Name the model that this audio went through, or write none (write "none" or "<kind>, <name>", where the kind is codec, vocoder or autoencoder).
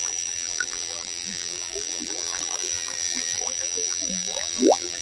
vocoder, BigVGAN v2